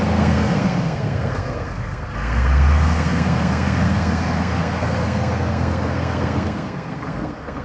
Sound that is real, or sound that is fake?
fake